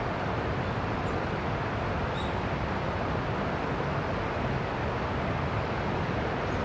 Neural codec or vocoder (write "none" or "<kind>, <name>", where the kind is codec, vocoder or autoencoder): none